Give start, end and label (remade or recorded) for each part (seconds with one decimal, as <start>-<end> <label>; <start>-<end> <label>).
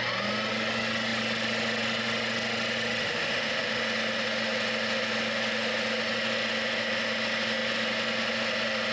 0.0-3.0 recorded; 3.0-3.8 remade; 3.8-8.9 recorded